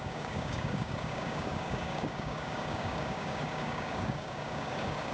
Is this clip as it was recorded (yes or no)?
no